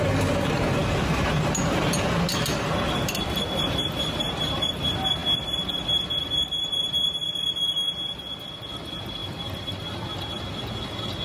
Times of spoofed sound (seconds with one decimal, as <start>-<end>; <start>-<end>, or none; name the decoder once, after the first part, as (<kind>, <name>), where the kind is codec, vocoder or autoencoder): 5.2-5.7 (vocoder, BigVGAN v2); 9.2-9.9